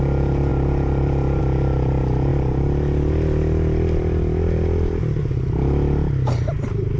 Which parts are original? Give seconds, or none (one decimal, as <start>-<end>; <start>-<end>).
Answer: 0.0-7.0